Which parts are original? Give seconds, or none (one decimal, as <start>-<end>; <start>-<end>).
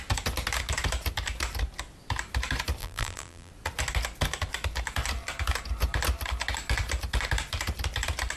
0.0-2.8; 3.5-8.4